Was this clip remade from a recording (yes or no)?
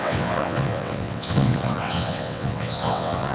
yes